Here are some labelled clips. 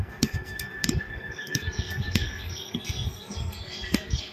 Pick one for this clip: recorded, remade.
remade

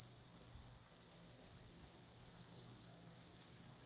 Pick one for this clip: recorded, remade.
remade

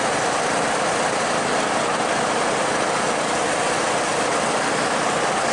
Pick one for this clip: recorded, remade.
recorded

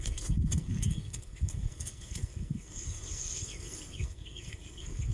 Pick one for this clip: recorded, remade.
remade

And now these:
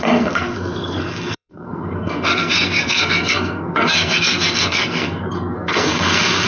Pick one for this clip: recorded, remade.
remade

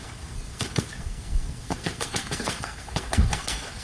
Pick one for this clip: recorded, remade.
remade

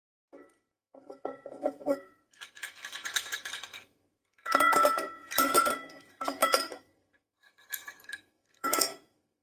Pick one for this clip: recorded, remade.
remade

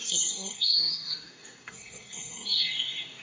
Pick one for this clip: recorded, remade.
remade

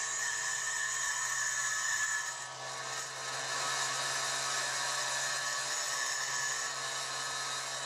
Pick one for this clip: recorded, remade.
recorded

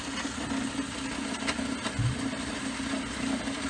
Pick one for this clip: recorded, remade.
recorded